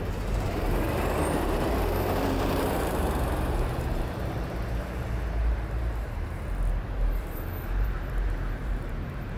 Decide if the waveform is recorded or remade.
remade